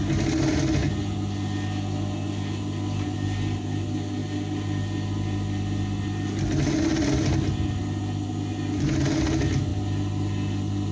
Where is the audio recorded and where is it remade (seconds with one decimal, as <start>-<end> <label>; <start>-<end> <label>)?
0.0-10.9 recorded